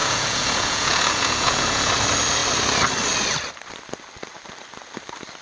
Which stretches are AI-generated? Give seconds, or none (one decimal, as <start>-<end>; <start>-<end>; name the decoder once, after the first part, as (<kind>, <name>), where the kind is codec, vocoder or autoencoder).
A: 0.0-1.9 (vocoder, Vocos)